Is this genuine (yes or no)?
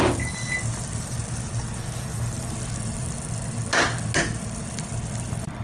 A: yes